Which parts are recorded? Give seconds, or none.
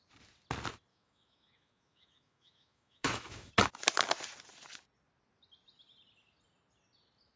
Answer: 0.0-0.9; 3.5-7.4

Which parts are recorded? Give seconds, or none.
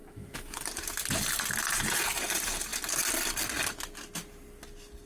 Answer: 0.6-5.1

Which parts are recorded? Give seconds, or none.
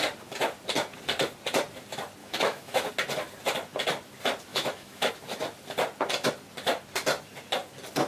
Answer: 0.0-2.2; 2.9-4.5; 5.1-8.1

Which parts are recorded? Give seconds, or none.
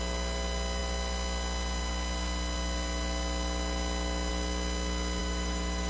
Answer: 0.0-5.2